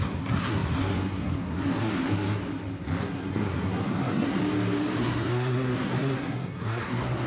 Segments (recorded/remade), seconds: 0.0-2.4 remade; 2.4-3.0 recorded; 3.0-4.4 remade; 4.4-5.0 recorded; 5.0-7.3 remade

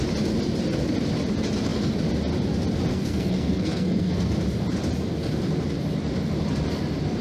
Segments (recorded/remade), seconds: 0.0-2.9 recorded; 2.9-4.3 remade; 4.3-7.2 recorded

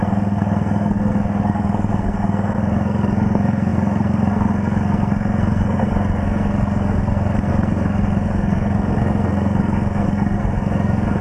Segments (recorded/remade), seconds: 0.0-11.2 remade